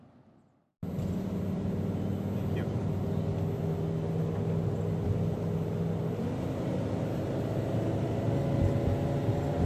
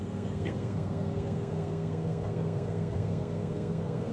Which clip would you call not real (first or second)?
second